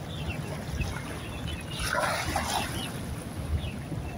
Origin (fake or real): real